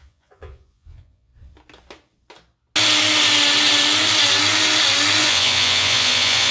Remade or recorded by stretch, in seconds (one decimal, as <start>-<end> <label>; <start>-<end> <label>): 0.0-1.3 remade; 1.3-5.2 recorded; 5.2-6.5 remade